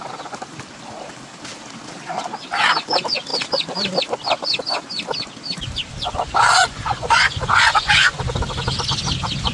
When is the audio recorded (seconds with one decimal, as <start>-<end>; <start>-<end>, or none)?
0.0-6.6; 8.2-9.5